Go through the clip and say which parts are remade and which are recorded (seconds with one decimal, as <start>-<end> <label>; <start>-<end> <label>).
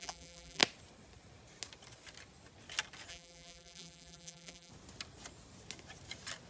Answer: 0.0-0.6 remade; 0.6-3.1 recorded; 3.1-4.7 remade; 4.7-6.5 recorded